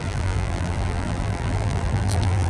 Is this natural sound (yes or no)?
no